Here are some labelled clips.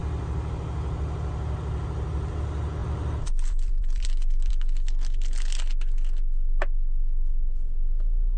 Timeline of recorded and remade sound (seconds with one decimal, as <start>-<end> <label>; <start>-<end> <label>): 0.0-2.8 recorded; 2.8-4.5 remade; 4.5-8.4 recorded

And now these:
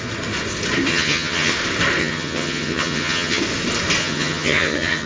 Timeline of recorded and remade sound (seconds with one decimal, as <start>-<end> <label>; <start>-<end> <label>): 0.0-0.9 recorded; 0.9-1.5 remade; 1.5-2.0 recorded; 2.0-3.4 remade; 3.4-4.0 recorded; 4.0-5.1 remade

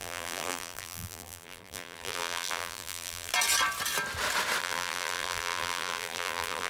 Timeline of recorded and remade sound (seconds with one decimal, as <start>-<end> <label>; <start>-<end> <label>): 0.0-3.3 remade; 3.3-4.6 recorded; 4.6-6.7 remade